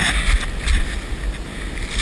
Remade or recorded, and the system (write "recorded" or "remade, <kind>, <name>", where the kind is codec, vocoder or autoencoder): recorded